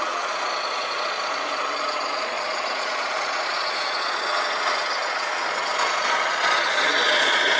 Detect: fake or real fake